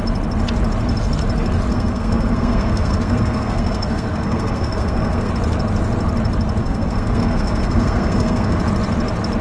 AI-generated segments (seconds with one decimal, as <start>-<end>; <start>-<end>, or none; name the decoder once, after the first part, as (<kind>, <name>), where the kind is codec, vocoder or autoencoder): 1.7-5.3 (codec, SNAC); 6.6-8.6